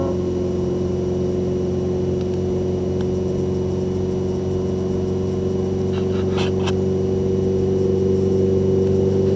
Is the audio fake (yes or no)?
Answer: no